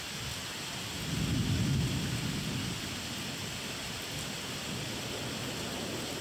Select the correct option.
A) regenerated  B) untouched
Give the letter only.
B